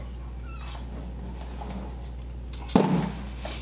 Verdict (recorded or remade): recorded